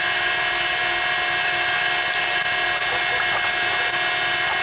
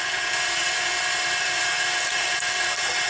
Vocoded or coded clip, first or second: second